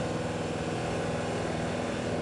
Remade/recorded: recorded